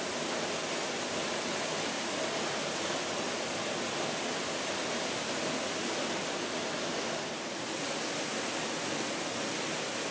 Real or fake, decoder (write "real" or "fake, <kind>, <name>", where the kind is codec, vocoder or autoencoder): real